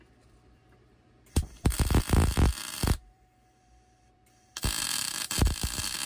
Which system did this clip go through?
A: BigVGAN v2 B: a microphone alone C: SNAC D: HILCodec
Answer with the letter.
A